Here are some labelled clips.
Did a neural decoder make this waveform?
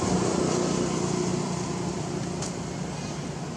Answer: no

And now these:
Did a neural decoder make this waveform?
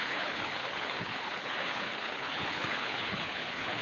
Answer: yes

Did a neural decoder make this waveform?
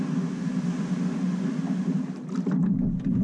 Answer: no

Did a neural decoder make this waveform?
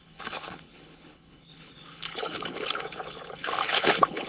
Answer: yes